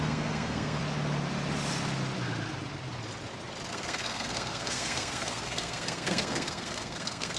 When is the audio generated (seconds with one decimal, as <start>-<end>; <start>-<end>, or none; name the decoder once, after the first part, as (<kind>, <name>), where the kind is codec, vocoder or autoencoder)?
0.0-0.8 (codec, SNAC); 3.7-7.4